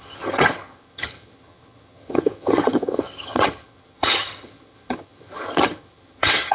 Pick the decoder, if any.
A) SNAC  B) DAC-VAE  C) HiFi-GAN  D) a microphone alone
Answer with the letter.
C